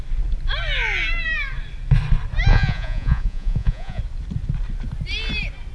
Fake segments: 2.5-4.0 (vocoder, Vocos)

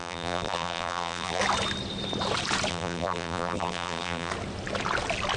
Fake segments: 0.0-1.4 (vocoder, BigVGAN v2); 2.7-4.3